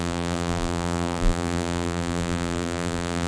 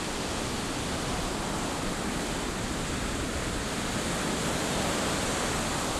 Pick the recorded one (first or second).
second